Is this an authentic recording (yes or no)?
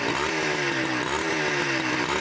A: yes